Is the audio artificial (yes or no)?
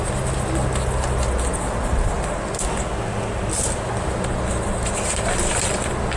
no